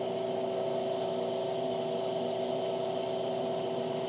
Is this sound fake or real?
real